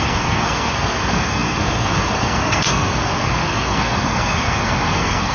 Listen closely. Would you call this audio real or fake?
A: fake